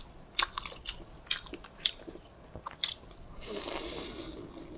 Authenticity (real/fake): real